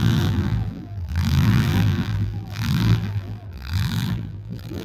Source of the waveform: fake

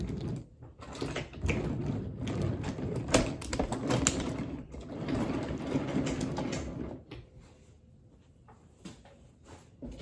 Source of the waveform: real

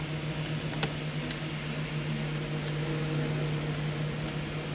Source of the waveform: real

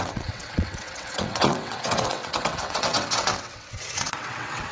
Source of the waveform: fake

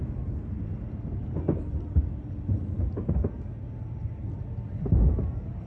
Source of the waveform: real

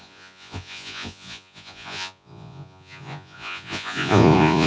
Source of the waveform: fake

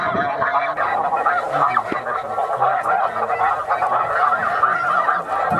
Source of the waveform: real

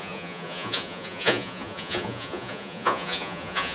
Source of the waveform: fake